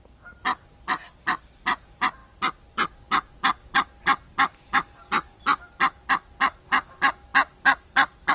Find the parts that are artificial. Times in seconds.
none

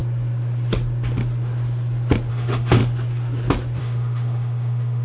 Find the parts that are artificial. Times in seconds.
2.3-2.8 (autoencoder, DAC-VAE); 3.8-5.0

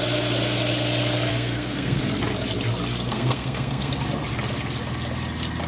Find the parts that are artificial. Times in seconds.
1.3-2.1 (codec, SNAC); 3.1-3.9

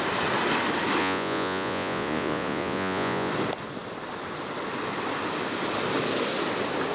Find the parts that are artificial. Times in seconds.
1.0-3.3 (vocoder, Vocos)

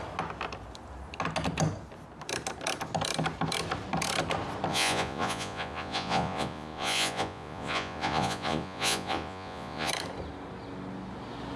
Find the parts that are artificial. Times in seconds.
4.7-9.9 (vocoder, Vocos)

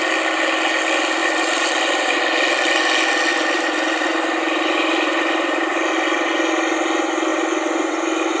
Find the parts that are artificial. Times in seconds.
1.2-2.2 (vocoder, BigVGAN v2); 3.3-5.9